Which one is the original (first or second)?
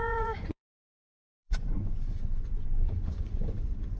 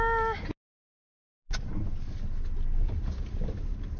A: second